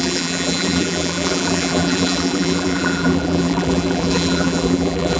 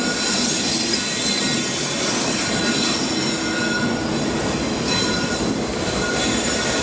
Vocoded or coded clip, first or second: first